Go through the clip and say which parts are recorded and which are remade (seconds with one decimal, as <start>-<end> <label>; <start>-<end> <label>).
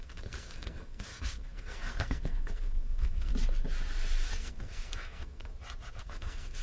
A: 0.0-3.3 remade; 3.3-4.3 recorded; 4.3-5.5 remade; 5.5-6.0 recorded; 6.0-6.6 remade